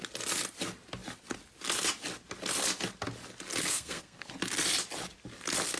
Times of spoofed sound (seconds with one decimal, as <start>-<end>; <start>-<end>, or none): 3.6-4.3